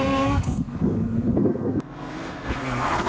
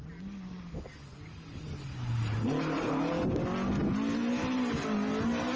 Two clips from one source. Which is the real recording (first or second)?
second